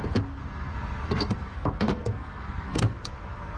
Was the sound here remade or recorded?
remade